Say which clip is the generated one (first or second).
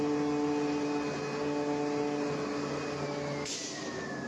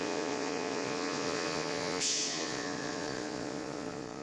second